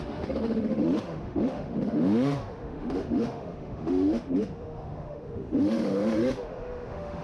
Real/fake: fake